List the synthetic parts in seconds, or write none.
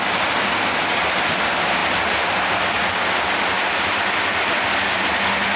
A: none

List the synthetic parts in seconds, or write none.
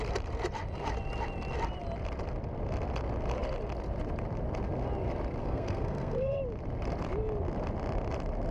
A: 5.4-6.4 (codec, SNAC)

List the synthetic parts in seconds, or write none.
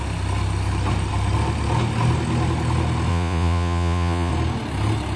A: 3.1-4.3 (vocoder, Vocos)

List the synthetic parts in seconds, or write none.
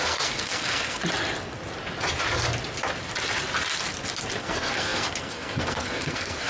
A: 0.0-1.0 (codec, SNAC); 4.4-6.5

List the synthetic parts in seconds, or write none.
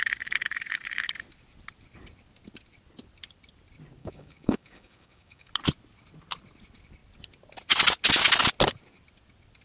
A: 4.0-5.5 (codec, DAC)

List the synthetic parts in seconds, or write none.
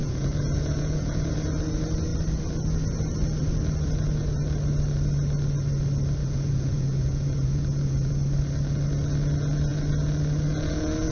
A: 0.0-1.3 (vocoder, Vocos); 6.2-8.1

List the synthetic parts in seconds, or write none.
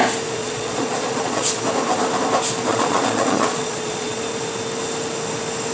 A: 0.4-1.6 (vocoder, Vocos); 2.7-4.2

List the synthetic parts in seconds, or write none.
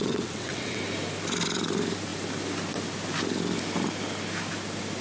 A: 0.0-0.8 (vocoder, WaveNeXt)